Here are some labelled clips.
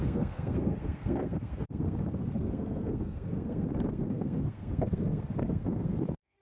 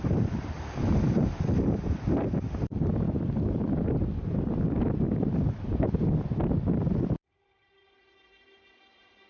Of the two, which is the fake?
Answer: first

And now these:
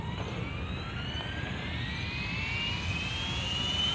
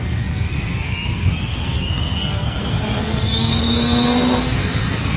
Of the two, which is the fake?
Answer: second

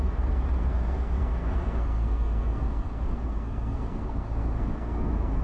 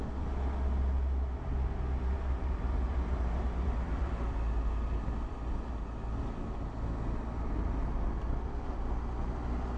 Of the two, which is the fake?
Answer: first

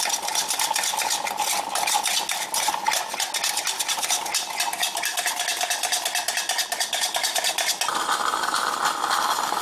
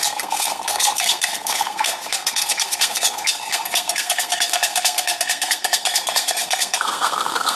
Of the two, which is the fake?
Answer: second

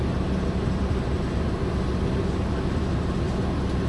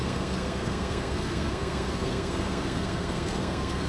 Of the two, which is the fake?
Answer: second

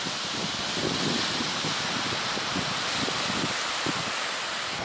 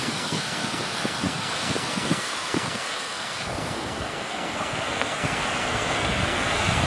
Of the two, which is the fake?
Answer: second